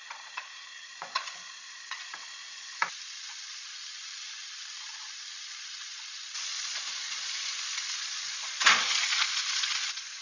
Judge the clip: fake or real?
fake